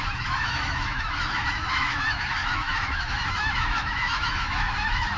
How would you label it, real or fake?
fake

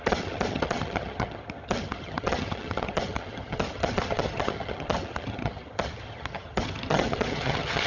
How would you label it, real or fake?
fake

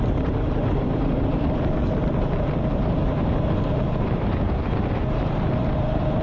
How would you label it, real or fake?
fake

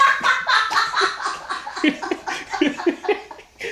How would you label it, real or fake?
real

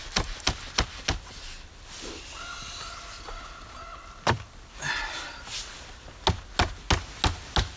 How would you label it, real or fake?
real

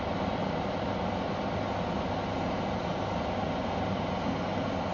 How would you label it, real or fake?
real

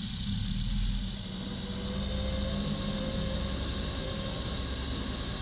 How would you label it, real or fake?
real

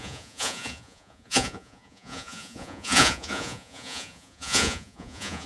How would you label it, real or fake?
fake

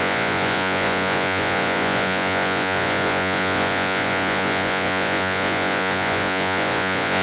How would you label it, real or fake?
fake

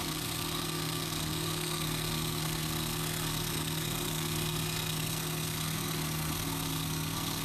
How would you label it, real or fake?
fake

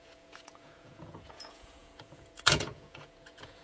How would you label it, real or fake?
fake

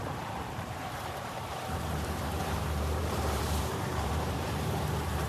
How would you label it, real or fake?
fake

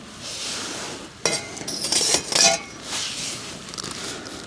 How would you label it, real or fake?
real